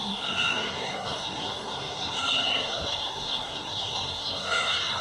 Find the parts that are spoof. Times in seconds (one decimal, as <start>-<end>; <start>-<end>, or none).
0.0-5.0